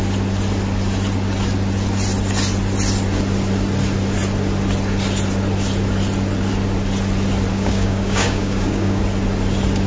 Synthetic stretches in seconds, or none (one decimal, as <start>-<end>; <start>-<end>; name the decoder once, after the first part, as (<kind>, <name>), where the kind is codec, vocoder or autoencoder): 7.5-9.0 (codec, DAC)